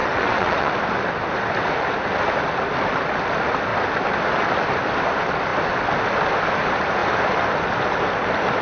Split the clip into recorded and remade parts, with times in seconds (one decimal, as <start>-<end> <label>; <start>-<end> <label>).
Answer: 0.0-0.7 remade; 0.7-8.6 recorded